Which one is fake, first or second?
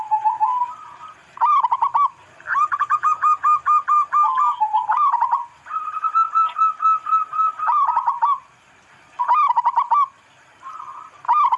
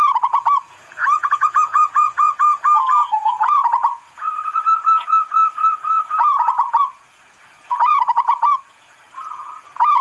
second